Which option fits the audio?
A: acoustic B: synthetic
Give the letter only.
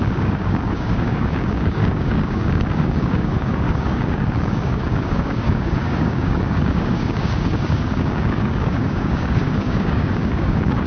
B